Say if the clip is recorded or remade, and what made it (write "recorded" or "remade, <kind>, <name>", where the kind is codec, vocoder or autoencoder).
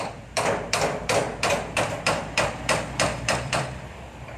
remade, vocoder, BigVGAN v2